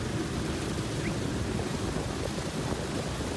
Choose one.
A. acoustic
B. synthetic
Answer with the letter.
A